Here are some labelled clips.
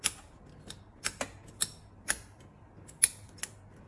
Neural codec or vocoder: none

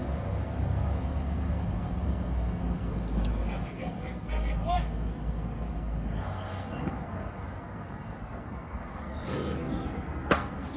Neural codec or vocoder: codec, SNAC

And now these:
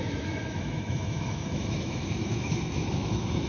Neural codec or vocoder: autoencoder, DAC-VAE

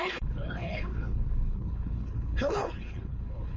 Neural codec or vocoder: codec, HILCodec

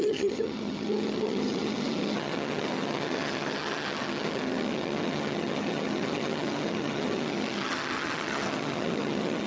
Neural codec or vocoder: vocoder, HiFi-GAN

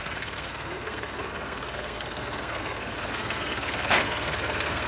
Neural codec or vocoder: codec, SNAC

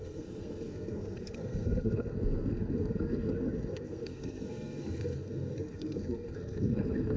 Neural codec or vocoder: codec, SNAC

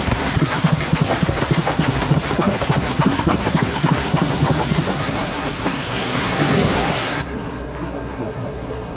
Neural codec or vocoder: codec, SNAC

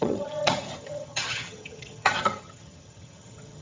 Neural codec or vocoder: vocoder, HiFi-GAN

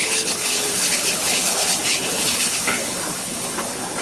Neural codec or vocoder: codec, HILCodec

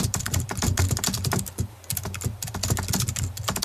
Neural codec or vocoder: none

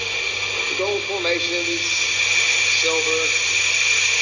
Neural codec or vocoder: none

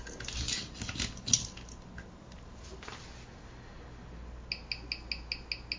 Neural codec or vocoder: none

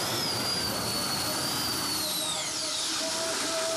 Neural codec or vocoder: none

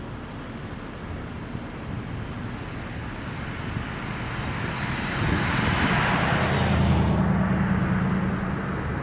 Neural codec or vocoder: none